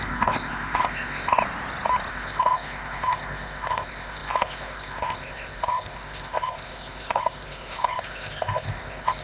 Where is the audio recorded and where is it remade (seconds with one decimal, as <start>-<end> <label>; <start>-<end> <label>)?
0.0-1.4 remade; 1.4-2.1 recorded; 2.1-9.2 remade